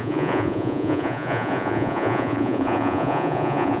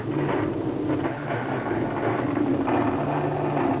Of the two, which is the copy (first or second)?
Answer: first